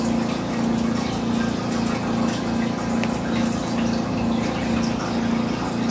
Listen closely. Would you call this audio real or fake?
real